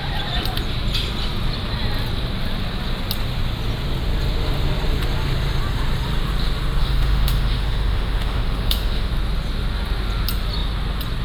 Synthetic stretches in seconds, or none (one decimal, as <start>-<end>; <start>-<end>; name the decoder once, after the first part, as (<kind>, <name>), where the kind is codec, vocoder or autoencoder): 6.8-9.1 (autoencoder, DAC-VAE)